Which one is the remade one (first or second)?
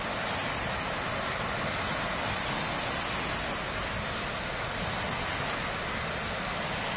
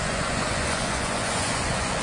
second